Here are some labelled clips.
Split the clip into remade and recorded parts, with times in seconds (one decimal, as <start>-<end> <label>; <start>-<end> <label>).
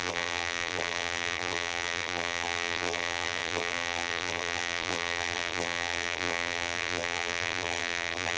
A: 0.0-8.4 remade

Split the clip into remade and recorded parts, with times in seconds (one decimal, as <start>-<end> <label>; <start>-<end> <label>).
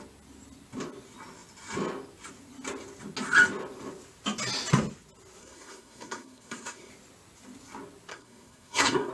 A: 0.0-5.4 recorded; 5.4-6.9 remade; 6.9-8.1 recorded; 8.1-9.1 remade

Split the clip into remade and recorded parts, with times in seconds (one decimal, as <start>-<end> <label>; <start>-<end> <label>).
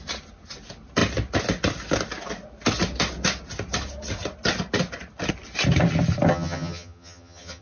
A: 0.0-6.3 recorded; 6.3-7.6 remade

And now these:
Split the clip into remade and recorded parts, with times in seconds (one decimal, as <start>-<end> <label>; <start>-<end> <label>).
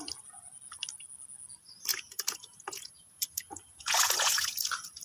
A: 0.0-1.9 recorded; 1.9-5.0 remade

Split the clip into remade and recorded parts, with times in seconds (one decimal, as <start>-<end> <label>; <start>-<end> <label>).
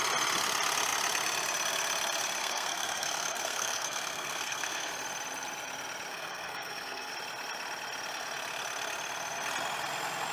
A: 0.0-2.4 recorded; 2.4-4.9 remade; 4.9-6.1 recorded; 6.1-7.1 remade; 7.1-10.3 recorded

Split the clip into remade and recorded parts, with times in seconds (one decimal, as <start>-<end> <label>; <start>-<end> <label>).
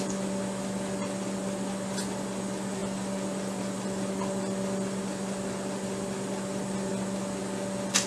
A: 0.0-8.1 recorded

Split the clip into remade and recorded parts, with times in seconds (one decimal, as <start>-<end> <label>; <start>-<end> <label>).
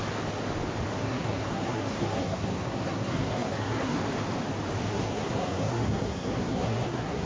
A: 0.0-1.0 recorded; 1.0-4.0 remade; 4.0-4.9 recorded; 4.9-7.3 remade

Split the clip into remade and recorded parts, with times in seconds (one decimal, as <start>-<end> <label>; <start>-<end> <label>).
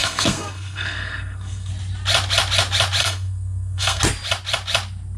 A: 0.0-1.7 remade; 1.7-3.0 recorded; 3.0-4.0 remade; 4.0-5.2 recorded